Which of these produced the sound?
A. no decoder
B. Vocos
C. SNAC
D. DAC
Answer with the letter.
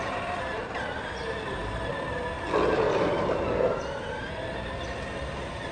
A